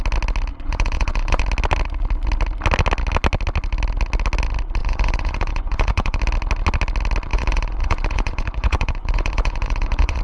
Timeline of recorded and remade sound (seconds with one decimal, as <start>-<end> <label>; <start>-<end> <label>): 0.0-0.5 recorded; 0.5-1.4 remade; 1.4-4.8 recorded; 4.8-6.2 remade; 6.2-7.3 recorded; 7.3-10.2 remade